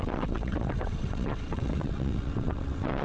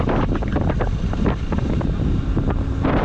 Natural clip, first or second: second